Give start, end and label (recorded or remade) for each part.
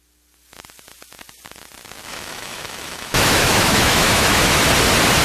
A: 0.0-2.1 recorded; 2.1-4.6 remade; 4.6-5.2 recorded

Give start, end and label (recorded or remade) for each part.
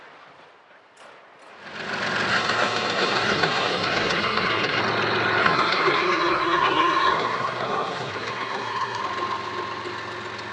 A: 0.0-2.3 recorded; 2.3-4.8 remade; 4.8-5.4 recorded; 5.4-9.0 remade; 9.0-10.5 recorded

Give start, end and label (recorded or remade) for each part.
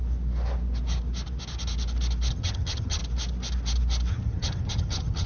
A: 0.0-2.3 recorded; 2.3-3.0 remade; 3.0-4.1 recorded; 4.1-5.3 remade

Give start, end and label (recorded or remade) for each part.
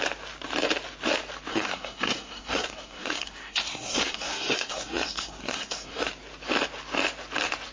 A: 0.0-1.5 recorded; 1.5-6.1 remade; 6.1-7.7 recorded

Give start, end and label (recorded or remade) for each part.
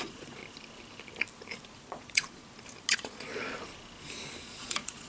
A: 0.0-0.4 remade; 0.4-1.8 recorded; 1.8-2.4 remade; 2.4-2.9 recorded; 2.9-3.3 remade; 3.3-4.4 recorded; 4.4-5.1 remade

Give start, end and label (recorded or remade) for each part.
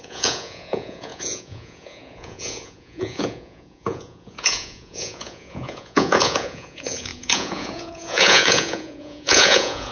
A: 0.0-9.9 remade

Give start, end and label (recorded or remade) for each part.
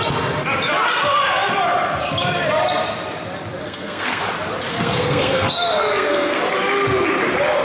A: 0.0-3.6 recorded; 3.6-4.2 remade; 4.2-4.7 recorded; 4.7-6.4 remade; 6.4-7.6 recorded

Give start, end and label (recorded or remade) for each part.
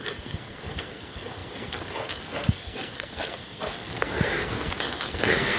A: 0.0-5.6 remade